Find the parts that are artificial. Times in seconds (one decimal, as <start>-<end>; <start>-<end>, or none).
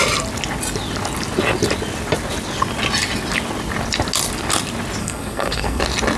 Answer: 5.0-5.8